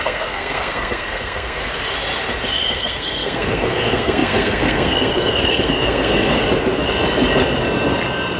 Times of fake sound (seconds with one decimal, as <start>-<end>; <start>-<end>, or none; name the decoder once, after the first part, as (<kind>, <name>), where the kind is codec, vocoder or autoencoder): 0.0-1.6 (codec, SNAC); 2.7-6.4